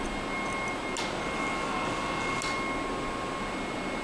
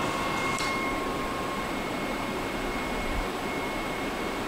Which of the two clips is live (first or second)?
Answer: first